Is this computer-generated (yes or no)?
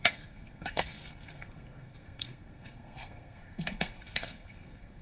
yes